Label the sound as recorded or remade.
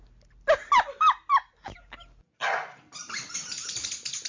recorded